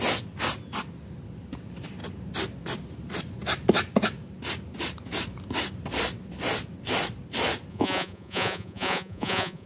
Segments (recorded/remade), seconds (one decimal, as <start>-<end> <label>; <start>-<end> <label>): 0.0-7.7 recorded; 7.7-9.7 remade